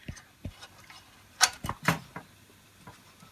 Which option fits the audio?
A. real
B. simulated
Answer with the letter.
A